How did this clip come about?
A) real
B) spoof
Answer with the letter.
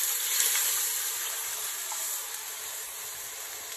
A